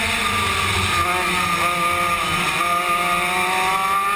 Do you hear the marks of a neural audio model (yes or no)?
no